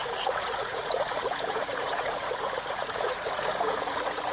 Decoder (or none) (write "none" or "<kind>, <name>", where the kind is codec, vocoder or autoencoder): vocoder, Vocos